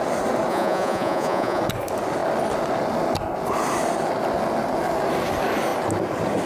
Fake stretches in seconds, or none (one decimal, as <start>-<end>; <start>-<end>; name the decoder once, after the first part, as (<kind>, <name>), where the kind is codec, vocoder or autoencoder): 0.5-1.6 (vocoder, Vocos)